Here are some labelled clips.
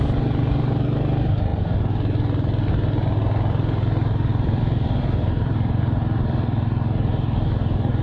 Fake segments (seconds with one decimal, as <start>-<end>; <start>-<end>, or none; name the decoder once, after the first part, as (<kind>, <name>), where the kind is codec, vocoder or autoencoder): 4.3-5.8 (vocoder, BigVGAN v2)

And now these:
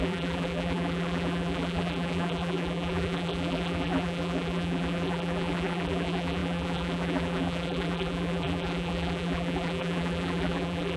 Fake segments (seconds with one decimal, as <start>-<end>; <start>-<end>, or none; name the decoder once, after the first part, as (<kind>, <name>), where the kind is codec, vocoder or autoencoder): 0.0-11.0 (vocoder, BigVGAN v2)

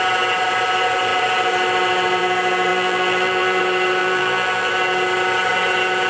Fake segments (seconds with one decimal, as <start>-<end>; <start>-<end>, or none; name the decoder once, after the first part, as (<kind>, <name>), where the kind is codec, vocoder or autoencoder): 2.7-3.6 (vocoder, BigVGAN v2); 4.0-4.7

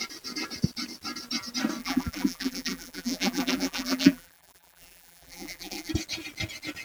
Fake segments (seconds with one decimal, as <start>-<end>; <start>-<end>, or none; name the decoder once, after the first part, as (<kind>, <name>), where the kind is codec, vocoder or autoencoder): 1.8-5.9 (vocoder, BigVGAN v2)

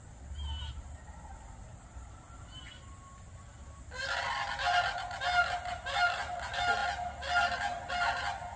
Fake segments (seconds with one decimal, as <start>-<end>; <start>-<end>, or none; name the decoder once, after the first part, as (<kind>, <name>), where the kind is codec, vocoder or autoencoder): 1.7-2.2 (vocoder, BigVGAN v2)

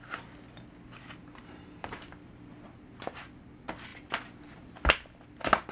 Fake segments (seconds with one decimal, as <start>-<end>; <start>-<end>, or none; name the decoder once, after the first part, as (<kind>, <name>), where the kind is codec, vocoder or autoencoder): 1.2-1.9 (vocoder, BigVGAN v2)

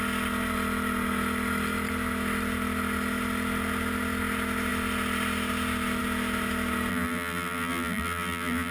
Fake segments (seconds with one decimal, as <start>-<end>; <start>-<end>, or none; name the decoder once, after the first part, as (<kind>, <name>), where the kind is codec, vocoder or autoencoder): 6.9-8.7 (vocoder, BigVGAN v2)